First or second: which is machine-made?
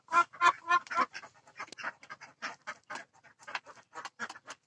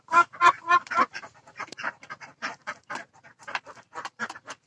second